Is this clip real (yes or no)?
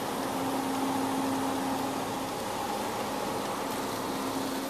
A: yes